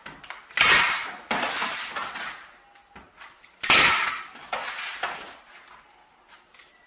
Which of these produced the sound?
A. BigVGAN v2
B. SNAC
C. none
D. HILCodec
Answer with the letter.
C